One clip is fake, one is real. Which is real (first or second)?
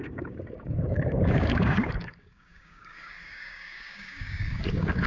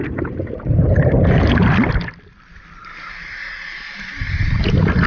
second